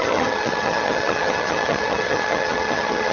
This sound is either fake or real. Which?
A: fake